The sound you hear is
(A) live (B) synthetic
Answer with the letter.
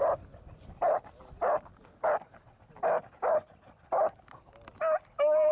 A